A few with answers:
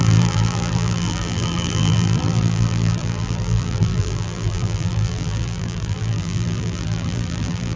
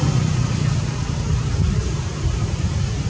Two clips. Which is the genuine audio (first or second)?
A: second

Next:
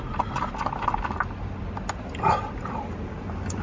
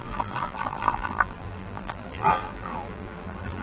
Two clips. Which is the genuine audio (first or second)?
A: first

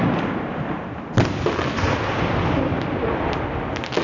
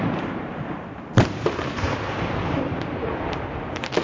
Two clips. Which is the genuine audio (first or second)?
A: first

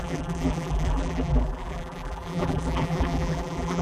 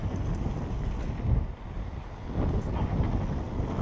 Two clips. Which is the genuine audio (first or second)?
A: second